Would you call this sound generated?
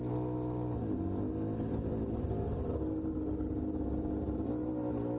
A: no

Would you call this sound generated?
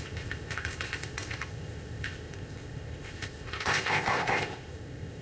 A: yes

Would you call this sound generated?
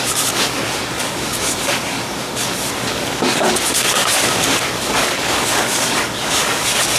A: yes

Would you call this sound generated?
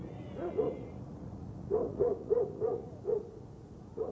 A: yes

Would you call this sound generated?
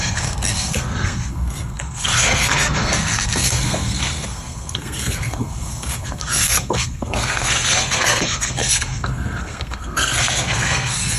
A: yes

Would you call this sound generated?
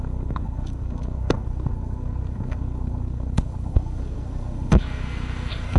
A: yes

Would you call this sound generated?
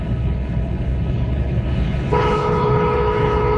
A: yes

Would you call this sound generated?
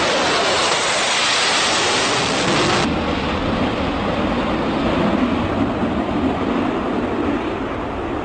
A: no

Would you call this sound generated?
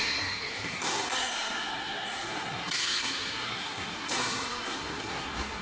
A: yes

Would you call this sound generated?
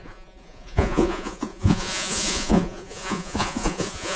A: yes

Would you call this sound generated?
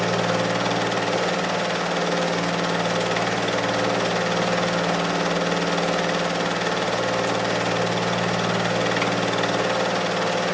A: no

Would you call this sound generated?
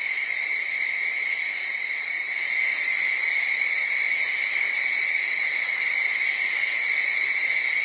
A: no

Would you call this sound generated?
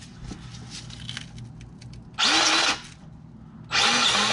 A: no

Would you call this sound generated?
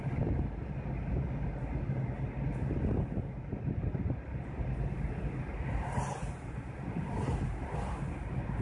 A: no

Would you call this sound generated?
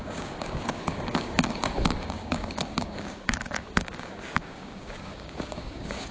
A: yes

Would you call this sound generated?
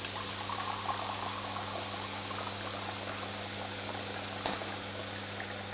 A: no